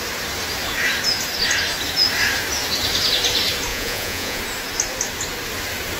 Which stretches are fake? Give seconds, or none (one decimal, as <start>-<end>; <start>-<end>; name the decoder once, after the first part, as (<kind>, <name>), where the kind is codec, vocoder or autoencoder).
3.7-4.4 (vocoder, Vocos)